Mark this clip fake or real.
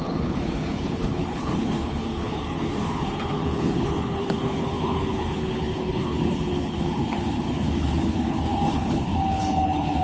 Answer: fake